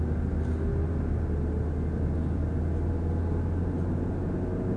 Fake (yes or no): no